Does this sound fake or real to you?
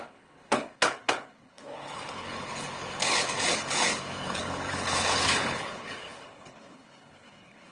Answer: fake